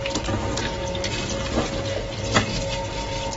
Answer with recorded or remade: recorded